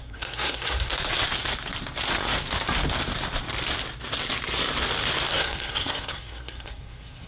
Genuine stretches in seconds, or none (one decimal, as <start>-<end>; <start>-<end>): 0.9-5.3